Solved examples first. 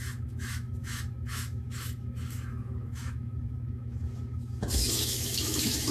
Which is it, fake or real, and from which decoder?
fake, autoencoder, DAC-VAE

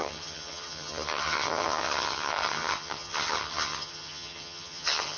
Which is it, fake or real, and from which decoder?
fake, vocoder, HiFi-GAN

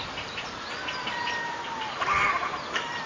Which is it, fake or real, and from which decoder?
fake, vocoder, BigVGAN v2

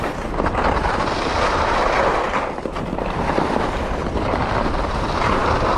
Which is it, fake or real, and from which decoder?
real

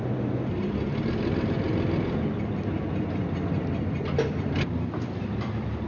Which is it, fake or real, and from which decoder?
real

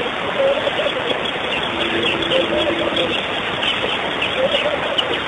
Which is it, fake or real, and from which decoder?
real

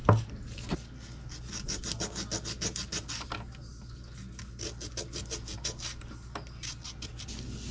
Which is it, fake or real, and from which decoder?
real